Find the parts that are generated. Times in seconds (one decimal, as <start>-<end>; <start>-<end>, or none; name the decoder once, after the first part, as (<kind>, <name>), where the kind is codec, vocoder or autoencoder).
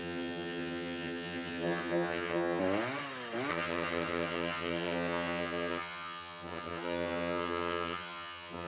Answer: 0.0-2.6 (vocoder, HiFi-GAN); 3.5-8.7